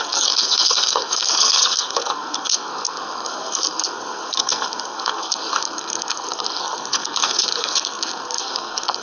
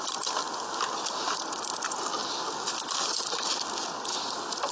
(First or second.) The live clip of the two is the second